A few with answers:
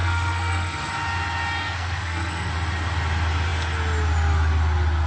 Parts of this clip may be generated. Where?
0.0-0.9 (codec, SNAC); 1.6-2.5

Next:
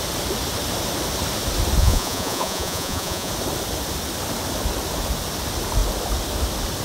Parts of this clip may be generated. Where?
1.8-3.3 (vocoder, Vocos)

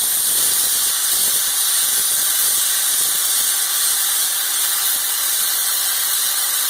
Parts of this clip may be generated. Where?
5.6-6.7 (vocoder, BigVGAN v2)

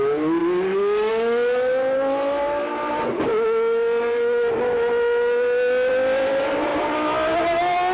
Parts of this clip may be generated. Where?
6.7-7.4 (vocoder, BigVGAN v2)

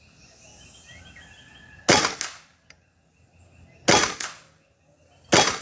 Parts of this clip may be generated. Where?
none

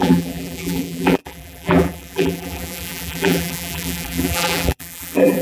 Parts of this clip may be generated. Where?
0.0-5.4 (vocoder, BigVGAN v2)

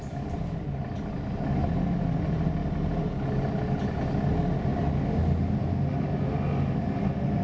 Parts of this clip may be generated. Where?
2.6-3.5 (vocoder, BigVGAN v2)

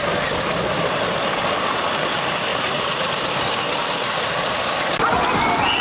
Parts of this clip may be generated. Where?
2.5-3.1 (vocoder, Vocos)